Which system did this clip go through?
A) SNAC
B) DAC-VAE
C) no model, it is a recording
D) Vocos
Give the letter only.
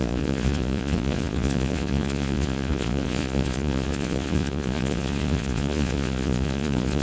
D